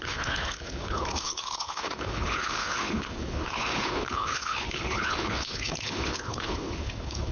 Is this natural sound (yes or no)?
no